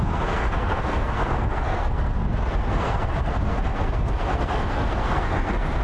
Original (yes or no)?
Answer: no